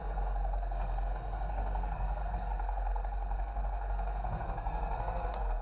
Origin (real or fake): fake